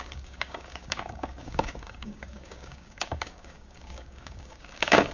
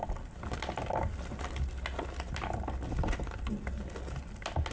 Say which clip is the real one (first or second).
second